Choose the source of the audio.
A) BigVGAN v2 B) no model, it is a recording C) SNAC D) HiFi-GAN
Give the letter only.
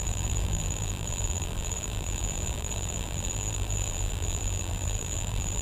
A